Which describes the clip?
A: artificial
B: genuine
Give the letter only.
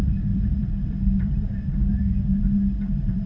A